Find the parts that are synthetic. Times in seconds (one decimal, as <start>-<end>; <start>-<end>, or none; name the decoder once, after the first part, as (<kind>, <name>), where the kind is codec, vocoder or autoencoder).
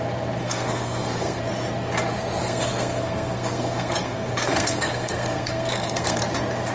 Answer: 0.4-1.4 (codec, SNAC); 2.4-6.2